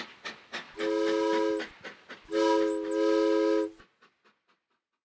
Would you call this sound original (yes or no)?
yes